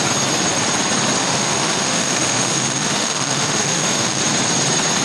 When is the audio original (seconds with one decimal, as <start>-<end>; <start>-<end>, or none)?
0.0-1.2; 4.2-5.0